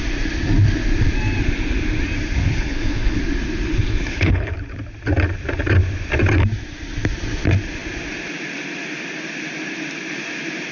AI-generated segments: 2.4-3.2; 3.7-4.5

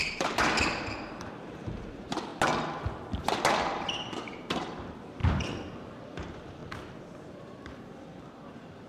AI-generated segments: 0.0-2.3; 3.5-5.2; 5.9-6.6; 7.2-8.9

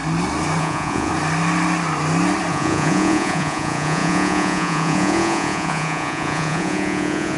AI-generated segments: 0.6-1.1; 2.5-7.4

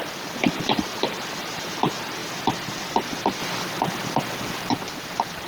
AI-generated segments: 0.0-0.9; 1.4-2.2; 2.7-3.4; 4.7-5.5